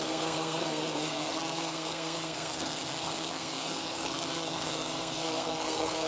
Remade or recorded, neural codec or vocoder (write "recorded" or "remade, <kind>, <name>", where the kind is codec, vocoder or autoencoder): remade, codec, SNAC